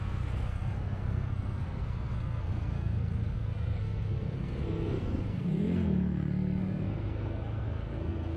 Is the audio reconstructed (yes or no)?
yes